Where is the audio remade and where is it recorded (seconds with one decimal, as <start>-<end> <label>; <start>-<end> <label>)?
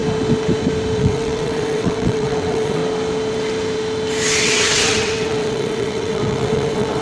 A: 0.0-1.0 recorded; 1.0-2.8 remade; 2.8-4.4 recorded; 4.4-7.0 remade